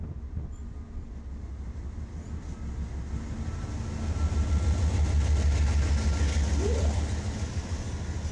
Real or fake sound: real